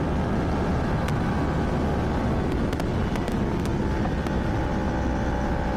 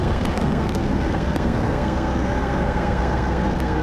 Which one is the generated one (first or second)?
second